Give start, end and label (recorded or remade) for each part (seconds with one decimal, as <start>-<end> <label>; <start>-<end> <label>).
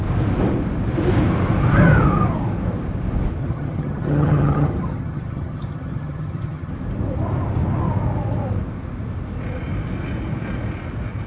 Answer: 0.0-3.4 recorded; 3.4-6.7 remade; 6.7-11.3 recorded